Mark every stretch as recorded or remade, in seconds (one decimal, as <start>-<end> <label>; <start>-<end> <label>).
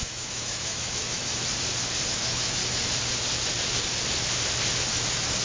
0.0-1.3 remade; 1.3-2.1 recorded; 2.1-2.6 remade; 2.6-4.9 recorded; 4.9-5.4 remade